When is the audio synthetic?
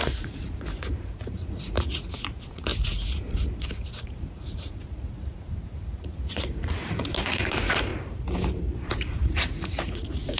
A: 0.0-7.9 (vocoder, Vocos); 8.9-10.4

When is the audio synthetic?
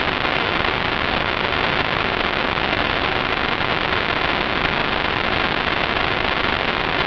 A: none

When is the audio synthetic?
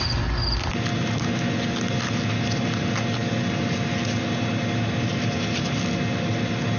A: none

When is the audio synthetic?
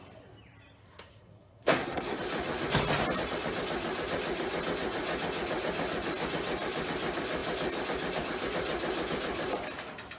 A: 0.8-2.2 (codec, SNAC)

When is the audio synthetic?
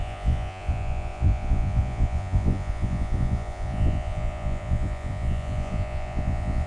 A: 0.0-6.7 (vocoder, Vocos)